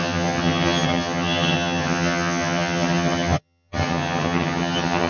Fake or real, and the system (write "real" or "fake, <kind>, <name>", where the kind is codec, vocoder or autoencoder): fake, vocoder, HiFi-GAN